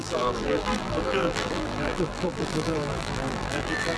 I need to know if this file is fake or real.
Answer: fake